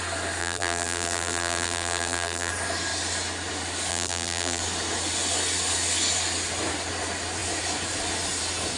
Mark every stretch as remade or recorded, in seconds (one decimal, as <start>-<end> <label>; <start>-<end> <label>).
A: 0.0-0.4 recorded; 0.4-2.5 remade; 2.5-3.9 recorded; 3.9-4.6 remade; 4.6-8.8 recorded